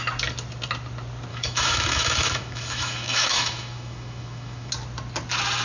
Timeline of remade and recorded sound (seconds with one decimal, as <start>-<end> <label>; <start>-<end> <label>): 0.0-1.3 recorded; 1.3-4.7 remade; 4.7-5.6 recorded